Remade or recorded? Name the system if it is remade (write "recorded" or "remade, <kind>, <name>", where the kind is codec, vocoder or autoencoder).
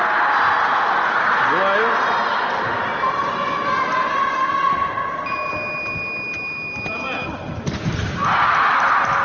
recorded